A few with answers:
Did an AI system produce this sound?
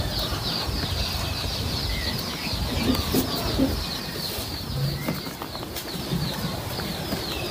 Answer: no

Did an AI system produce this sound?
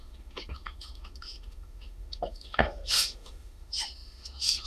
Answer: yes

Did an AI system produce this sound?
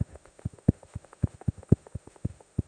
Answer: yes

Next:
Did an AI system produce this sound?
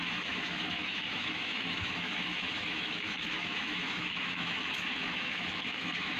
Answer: yes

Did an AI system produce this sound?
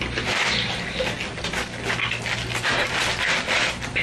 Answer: no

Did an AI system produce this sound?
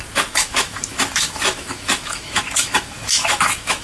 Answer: yes